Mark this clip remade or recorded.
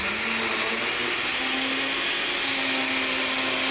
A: recorded